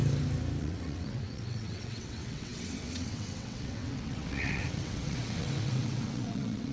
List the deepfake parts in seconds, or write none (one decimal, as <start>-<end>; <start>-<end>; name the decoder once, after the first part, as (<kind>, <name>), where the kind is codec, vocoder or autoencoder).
0.6-6.7 (vocoder, WaveNeXt)

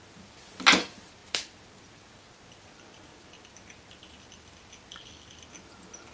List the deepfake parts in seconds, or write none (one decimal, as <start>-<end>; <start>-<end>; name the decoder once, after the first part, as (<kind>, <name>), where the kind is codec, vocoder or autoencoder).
none

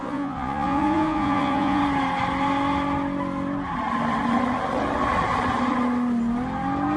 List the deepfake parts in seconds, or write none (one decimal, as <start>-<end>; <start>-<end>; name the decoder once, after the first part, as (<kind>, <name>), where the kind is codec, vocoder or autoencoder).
0.0-1.8 (vocoder, Vocos)

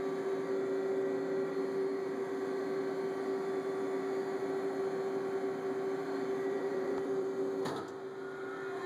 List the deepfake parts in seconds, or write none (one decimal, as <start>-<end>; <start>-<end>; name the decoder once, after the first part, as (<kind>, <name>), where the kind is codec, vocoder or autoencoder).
6.0-7.3 (vocoder, BigVGAN v2)

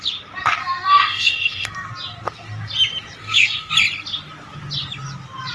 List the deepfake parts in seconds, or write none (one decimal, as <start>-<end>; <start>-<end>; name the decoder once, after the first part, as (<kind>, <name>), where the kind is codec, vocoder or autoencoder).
0.6-1.9 (codec, SNAC); 3.2-3.7

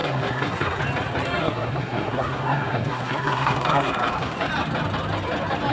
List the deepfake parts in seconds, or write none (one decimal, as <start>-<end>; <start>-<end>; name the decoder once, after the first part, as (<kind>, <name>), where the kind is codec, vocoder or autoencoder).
0.0-0.8 (codec, SNAC); 1.4-4.5

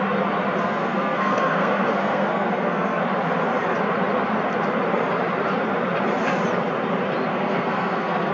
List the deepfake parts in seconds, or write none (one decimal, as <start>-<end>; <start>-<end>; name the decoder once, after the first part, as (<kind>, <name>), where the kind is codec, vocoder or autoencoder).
0.6-3.0 (codec, SNAC); 7.3-8.3

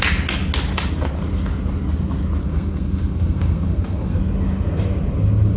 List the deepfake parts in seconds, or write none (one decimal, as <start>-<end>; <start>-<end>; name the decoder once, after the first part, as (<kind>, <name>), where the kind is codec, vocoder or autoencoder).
2.4-4.2 (codec, SNAC)